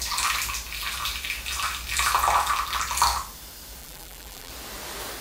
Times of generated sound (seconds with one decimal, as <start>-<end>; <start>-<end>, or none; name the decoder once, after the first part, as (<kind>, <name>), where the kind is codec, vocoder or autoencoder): 3.8-4.5 (vocoder, BigVGAN v2)